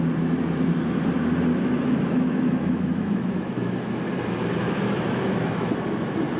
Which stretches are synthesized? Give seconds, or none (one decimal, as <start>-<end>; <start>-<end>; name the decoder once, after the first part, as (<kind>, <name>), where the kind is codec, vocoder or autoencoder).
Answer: 1.5-4.0 (autoencoder, DAC-VAE); 4.4-5.7